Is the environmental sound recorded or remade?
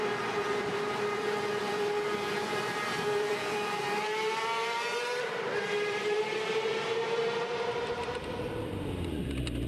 remade